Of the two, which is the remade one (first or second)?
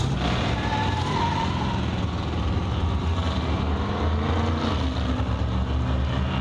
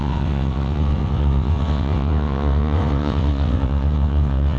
second